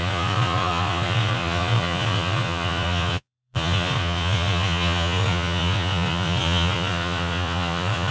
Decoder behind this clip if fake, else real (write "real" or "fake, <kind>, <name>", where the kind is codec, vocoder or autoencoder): fake, vocoder, Vocos